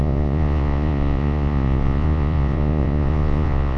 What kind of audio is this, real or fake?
fake